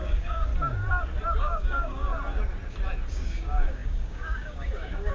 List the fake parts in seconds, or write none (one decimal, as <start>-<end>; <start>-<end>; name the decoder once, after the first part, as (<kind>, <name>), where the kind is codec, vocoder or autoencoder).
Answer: 0.0-0.5 (codec, DAC); 1.4-2.1; 3.1-5.1